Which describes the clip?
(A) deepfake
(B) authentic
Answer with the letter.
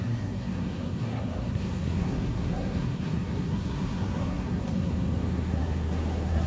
A